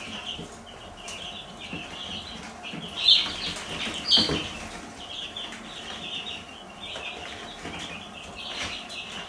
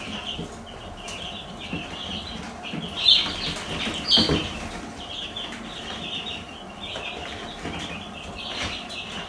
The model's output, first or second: second